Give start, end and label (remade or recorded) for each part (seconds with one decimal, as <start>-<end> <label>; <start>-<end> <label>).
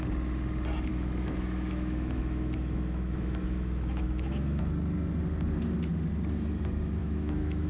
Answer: 0.0-0.9 recorded; 0.9-4.6 remade; 4.6-7.0 recorded; 7.0-7.7 remade